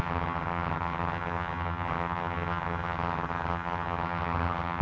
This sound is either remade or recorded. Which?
remade